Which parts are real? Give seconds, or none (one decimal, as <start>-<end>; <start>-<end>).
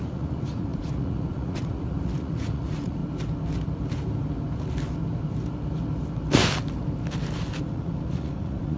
3.0-7.6